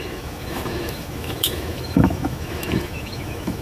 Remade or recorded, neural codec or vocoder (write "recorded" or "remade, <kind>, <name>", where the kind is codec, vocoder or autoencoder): remade, autoencoder, DAC-VAE